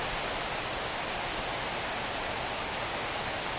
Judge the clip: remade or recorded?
recorded